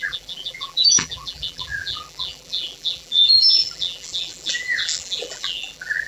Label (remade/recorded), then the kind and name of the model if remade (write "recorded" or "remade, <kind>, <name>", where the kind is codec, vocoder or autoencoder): remade, vocoder, BigVGAN v2